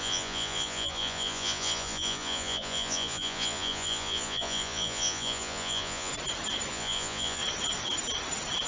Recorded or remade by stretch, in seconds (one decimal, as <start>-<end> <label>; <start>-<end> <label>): 0.0-6.1 remade; 6.1-6.7 recorded; 6.7-7.4 remade; 7.4-8.7 recorded